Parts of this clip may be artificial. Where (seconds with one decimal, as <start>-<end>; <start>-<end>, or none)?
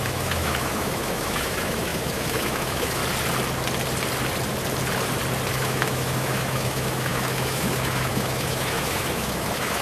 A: 0.0-3.0; 5.5-9.8